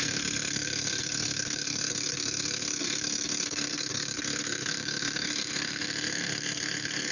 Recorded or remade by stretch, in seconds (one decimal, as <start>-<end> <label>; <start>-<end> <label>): 0.0-7.1 remade